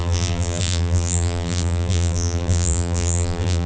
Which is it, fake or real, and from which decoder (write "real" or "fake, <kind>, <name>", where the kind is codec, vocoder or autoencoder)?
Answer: fake, vocoder, BigVGAN v2